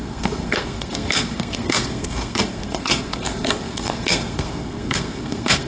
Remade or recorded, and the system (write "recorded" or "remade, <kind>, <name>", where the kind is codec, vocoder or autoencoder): remade, codec, SNAC